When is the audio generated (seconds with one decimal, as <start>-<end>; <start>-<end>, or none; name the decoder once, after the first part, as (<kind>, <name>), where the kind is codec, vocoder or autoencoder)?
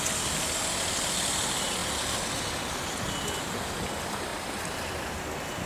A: 4.3-4.9 (vocoder, BigVGAN v2)